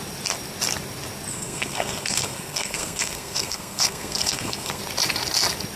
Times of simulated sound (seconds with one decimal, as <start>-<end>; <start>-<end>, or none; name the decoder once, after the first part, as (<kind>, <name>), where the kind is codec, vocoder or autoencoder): 1.3-4.8 (codec, SNAC)